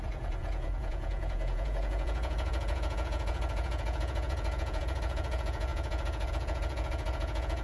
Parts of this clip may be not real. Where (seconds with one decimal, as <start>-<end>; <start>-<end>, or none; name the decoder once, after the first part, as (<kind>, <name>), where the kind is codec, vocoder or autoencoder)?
0.0-7.6 (vocoder, Vocos)